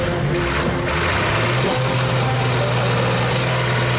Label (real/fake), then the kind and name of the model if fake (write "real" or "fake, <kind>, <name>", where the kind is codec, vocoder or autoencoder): real